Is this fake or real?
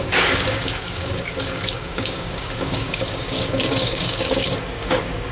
fake